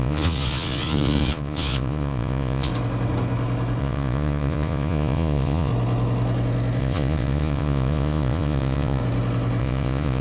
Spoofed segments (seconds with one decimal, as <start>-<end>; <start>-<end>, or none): 0.0-2.7; 3.8-5.7; 6.8-9.0; 9.6-10.2